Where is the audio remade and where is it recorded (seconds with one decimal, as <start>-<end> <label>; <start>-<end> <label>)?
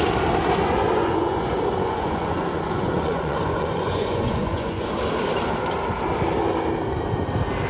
0.0-0.6 recorded; 0.6-4.9 remade; 4.9-7.7 recorded